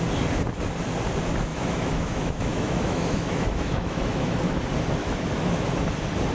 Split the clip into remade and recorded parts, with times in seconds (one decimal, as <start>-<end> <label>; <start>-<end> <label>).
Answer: 0.0-1.5 recorded; 1.5-4.6 remade; 4.6-5.0 recorded; 5.0-5.7 remade; 5.7-6.3 recorded